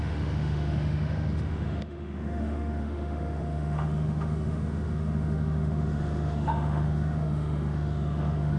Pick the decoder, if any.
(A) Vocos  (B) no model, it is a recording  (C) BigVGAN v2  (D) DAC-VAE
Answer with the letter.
D